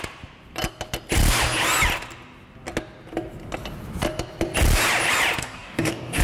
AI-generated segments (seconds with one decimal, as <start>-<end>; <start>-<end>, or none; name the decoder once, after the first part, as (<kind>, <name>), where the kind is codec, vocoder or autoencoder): 5.4-6.2 (codec, DAC)